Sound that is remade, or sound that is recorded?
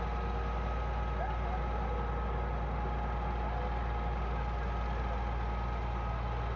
recorded